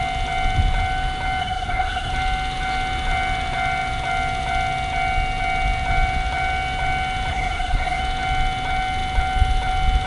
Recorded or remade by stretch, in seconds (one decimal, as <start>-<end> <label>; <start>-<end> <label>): 0.0-1.4 recorded; 1.4-2.1 remade; 2.1-7.3 recorded; 7.3-8.0 remade; 8.0-10.1 recorded